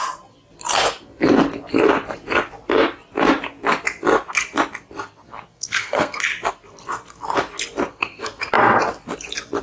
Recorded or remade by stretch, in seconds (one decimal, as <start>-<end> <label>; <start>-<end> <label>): 0.0-5.5 recorded; 5.5-6.2 remade; 6.2-7.9 recorded; 7.9-8.5 remade; 8.5-9.6 recorded